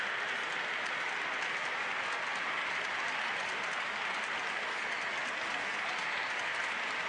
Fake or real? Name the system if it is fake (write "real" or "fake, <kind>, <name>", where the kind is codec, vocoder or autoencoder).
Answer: real